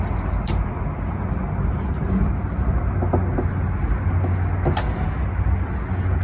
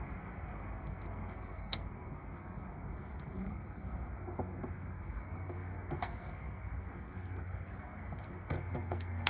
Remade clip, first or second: second